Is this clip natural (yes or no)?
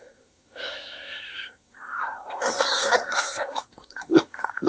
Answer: no